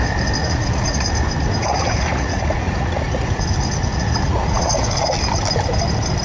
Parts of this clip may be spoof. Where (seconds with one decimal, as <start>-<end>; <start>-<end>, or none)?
0.4-1.1; 1.6-3.4; 3.9-5.1